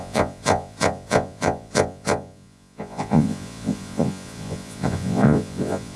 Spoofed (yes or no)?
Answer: yes